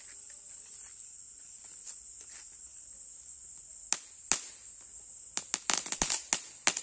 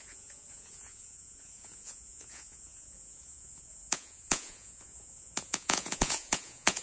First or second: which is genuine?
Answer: first